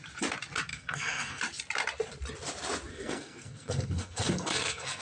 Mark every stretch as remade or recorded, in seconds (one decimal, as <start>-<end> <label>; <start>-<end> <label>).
0.0-0.7 recorded; 0.7-1.4 remade; 1.4-2.9 recorded; 2.9-5.0 remade

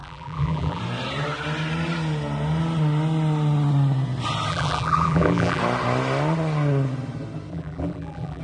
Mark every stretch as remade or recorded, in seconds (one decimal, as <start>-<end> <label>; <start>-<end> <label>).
0.0-0.8 remade; 0.8-4.5 recorded; 4.5-5.6 remade; 5.6-7.5 recorded; 7.5-8.4 remade

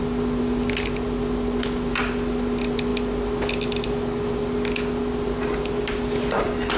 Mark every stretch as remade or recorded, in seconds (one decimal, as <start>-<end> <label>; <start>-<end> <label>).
0.0-6.8 recorded

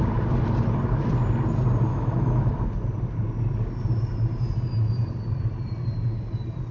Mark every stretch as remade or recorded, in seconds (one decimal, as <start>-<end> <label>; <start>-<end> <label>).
0.0-1.9 recorded; 1.9-2.5 remade; 2.5-6.7 recorded

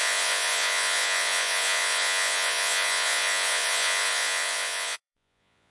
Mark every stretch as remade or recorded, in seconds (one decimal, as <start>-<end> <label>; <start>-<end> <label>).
0.0-5.7 remade

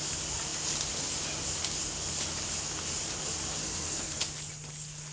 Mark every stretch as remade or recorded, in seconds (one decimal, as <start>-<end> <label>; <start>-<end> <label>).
0.0-3.6 recorded; 3.6-4.2 remade; 4.2-5.1 recorded